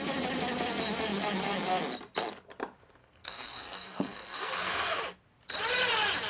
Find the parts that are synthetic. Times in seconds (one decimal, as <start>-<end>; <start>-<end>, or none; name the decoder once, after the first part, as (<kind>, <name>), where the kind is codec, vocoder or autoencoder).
3.0-5.0 (codec, SNAC)